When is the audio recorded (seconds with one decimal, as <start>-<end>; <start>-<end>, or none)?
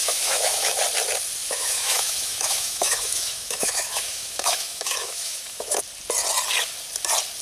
0.8-1.4; 5.8-7.4